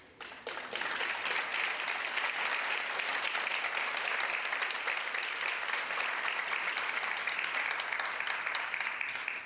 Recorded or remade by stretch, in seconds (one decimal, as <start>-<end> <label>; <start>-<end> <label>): 0.0-1.5 remade; 1.5-2.6 recorded; 2.6-9.5 remade